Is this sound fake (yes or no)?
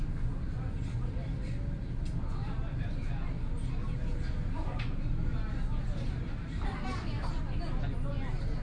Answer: no